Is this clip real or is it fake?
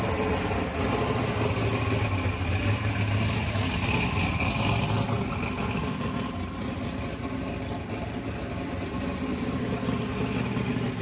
real